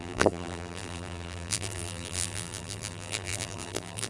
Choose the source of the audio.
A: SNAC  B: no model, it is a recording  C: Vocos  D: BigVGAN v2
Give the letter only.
D